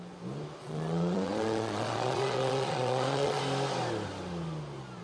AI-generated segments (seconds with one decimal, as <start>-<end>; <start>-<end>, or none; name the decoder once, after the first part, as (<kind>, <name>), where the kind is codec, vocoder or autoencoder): 0.6-3.4 (vocoder, Vocos)